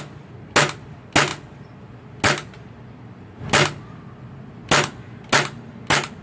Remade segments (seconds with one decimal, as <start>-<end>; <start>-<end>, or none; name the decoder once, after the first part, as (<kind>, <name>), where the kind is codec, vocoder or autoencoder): none